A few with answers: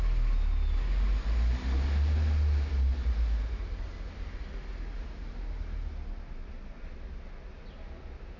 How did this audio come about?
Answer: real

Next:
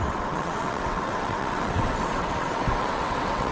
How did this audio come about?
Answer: fake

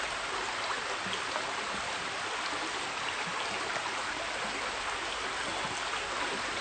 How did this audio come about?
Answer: real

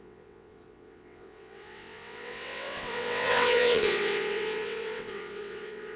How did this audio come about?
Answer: fake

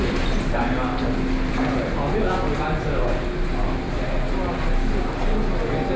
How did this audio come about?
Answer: real